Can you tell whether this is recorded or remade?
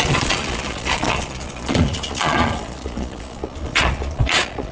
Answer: remade